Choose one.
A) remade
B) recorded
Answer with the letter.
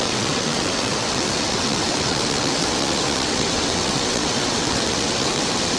A